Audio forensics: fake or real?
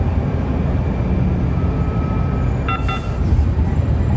real